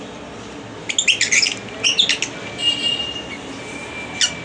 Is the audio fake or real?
real